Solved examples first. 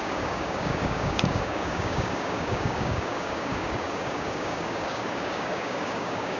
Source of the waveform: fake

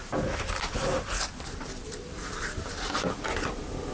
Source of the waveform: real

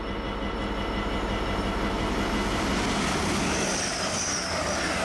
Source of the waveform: real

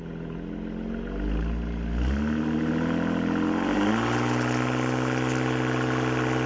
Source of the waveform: real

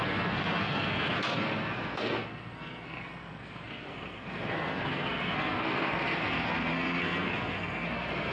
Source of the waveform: fake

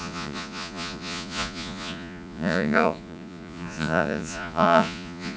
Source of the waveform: fake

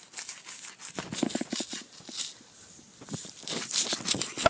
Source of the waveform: real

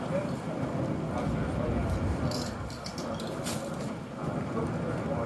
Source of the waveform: real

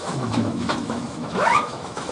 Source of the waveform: fake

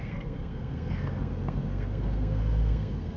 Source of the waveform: fake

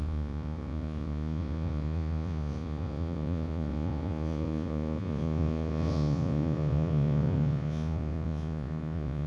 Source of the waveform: fake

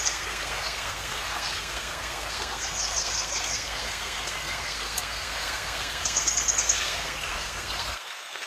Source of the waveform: fake